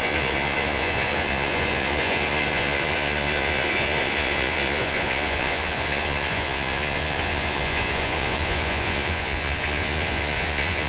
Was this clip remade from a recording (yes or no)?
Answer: yes